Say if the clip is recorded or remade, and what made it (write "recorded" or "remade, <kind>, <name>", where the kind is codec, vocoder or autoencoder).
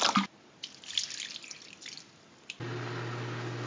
recorded